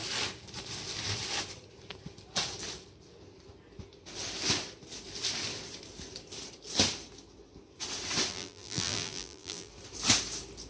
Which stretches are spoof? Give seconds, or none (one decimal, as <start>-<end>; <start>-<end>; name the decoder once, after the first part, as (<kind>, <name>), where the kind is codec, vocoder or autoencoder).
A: 8.3-9.7 (vocoder, BigVGAN v2)